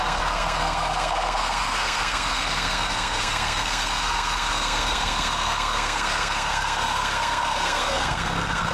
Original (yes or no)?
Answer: no